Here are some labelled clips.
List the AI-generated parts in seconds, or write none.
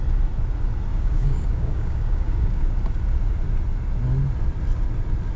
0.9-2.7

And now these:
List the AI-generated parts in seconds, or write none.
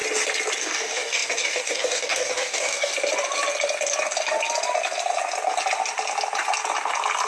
0.6-2.9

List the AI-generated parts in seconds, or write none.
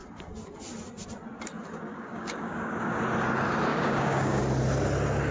1.9-3.0; 3.7-4.4